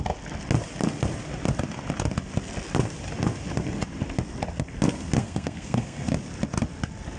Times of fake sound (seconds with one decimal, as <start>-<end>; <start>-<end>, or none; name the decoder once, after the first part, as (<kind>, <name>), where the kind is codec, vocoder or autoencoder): 5.2-6.1 (codec, SNAC)